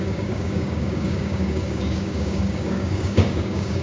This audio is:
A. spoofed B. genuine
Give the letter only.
A